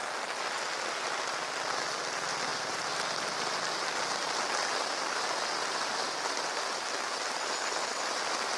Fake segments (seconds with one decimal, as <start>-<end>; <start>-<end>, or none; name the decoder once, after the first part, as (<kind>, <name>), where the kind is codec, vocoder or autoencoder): none